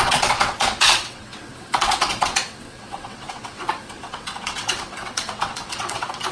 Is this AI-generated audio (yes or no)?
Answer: yes